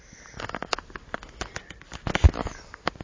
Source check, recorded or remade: recorded